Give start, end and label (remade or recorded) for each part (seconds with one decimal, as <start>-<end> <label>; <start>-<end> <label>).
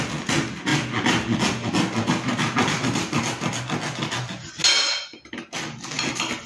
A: 0.0-6.5 recorded